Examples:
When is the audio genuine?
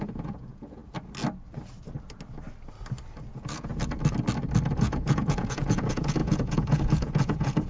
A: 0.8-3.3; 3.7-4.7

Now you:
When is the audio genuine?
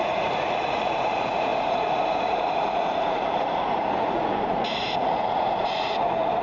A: none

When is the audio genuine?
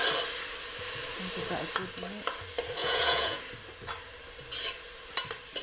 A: 0.0-2.8; 3.4-5.6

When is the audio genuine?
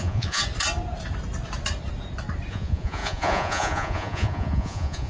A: 0.4-2.5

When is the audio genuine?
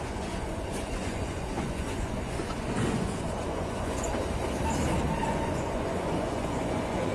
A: 4.1-5.2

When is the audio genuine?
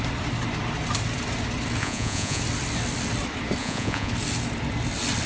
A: 0.0-1.8; 2.4-3.6; 4.1-5.3